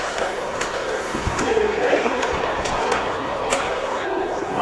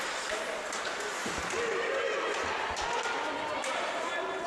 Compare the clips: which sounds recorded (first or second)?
second